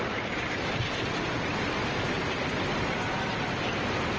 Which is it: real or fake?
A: real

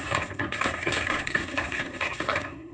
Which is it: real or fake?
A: fake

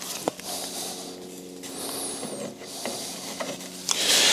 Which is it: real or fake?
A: real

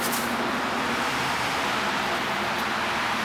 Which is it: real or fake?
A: real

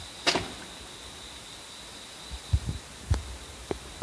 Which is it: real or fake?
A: real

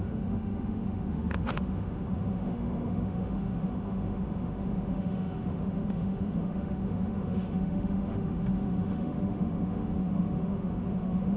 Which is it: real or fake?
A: fake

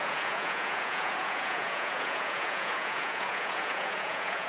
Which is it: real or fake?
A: fake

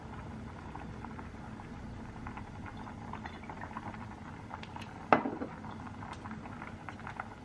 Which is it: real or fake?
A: real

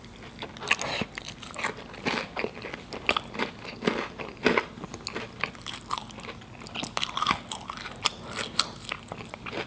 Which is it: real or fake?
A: real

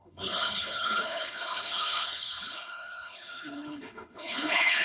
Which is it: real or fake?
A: fake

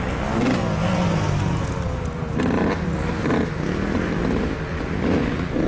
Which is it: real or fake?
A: real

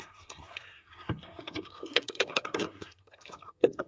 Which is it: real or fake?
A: fake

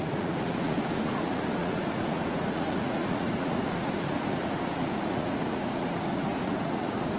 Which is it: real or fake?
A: fake